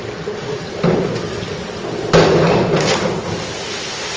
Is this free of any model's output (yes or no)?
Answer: yes